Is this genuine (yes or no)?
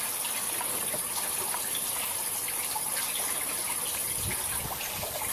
yes